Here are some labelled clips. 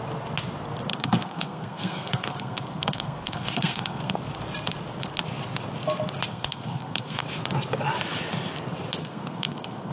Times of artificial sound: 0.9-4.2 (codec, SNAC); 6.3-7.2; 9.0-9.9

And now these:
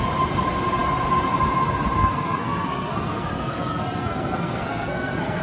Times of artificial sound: 2.0-5.4 (codec, SNAC)